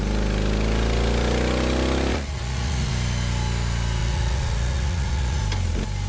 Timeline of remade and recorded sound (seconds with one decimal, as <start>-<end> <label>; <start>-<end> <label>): 0.0-2.1 recorded; 2.1-2.9 remade; 2.9-4.0 recorded; 4.0-5.4 remade; 5.4-6.1 recorded